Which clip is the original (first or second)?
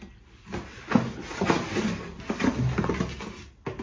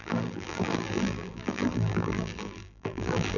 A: first